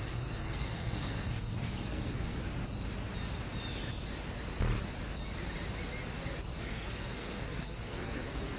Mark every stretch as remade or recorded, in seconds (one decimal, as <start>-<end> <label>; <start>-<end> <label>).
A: 0.0-2.4 remade; 2.4-6.6 recorded; 6.6-8.6 remade